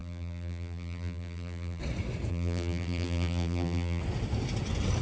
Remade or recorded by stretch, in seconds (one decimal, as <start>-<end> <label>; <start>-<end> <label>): 0.0-1.8 remade; 1.8-2.3 recorded; 2.3-4.0 remade; 4.0-5.0 recorded